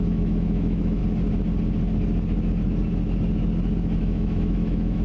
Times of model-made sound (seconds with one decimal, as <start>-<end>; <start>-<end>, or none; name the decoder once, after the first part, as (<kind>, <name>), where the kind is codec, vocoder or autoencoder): 0.0-1.0 (autoencoder, DAC-VAE); 4.0-5.0